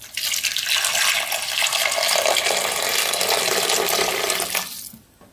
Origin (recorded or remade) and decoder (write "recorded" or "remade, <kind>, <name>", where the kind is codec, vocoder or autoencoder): recorded